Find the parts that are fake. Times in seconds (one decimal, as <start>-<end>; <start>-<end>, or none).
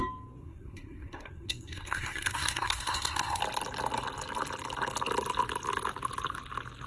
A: 0.4-3.4